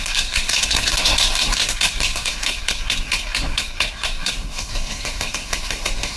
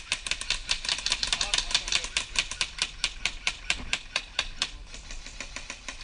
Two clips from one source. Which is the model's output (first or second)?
first